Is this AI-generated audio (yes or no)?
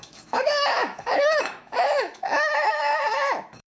yes